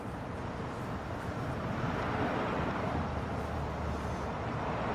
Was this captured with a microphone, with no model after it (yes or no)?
yes